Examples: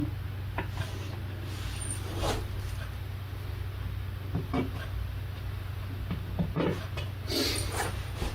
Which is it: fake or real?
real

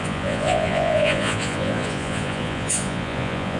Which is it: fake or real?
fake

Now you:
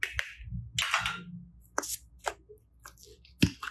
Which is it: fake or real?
real